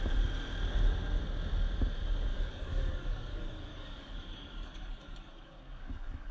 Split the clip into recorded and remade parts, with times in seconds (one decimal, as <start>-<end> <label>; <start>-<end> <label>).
0.0-2.3 recorded; 2.3-6.3 remade